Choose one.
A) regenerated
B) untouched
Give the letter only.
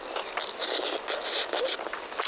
B